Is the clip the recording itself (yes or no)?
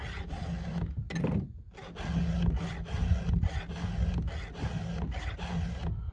yes